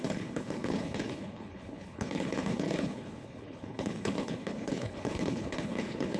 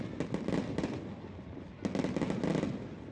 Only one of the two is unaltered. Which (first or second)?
second